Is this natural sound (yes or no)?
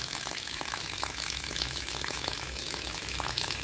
no